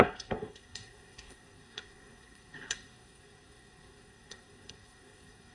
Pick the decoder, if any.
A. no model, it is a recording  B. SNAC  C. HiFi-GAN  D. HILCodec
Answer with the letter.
B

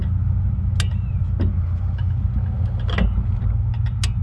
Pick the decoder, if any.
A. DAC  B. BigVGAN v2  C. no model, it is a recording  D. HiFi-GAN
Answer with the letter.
C